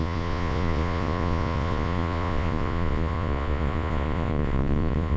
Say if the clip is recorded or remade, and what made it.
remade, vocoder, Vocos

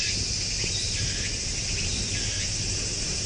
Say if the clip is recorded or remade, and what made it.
recorded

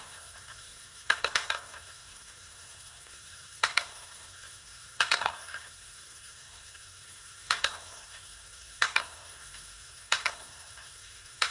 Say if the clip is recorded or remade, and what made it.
remade, codec, SNAC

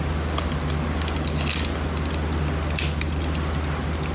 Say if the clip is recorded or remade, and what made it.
recorded